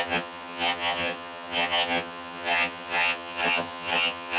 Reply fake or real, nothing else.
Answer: fake